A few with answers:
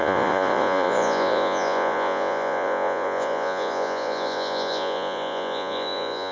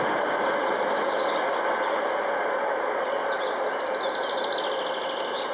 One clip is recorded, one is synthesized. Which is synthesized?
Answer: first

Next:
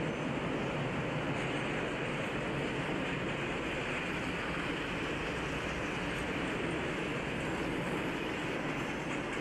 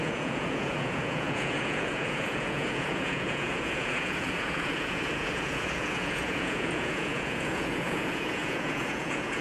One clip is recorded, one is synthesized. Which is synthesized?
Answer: second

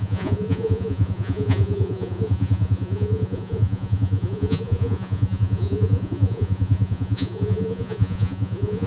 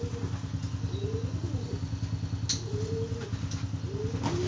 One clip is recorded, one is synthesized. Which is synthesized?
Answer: first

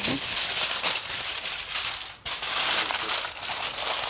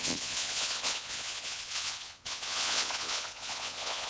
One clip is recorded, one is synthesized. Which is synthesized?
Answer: second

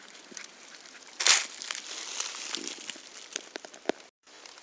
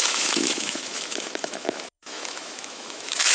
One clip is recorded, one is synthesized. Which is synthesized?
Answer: second